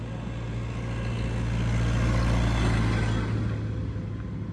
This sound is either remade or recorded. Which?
recorded